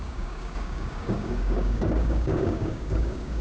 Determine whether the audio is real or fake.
fake